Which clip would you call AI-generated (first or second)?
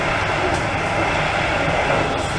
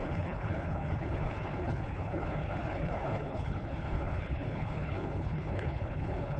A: second